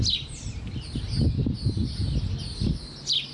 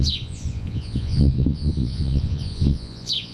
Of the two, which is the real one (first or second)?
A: first